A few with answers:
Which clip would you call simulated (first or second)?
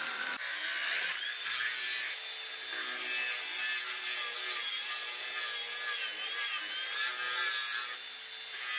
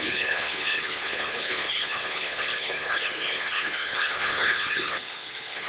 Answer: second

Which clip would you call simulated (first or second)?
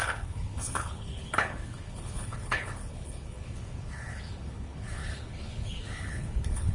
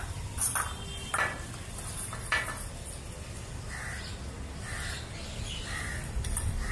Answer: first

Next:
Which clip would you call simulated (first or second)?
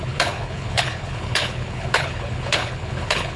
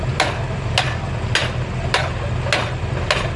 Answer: first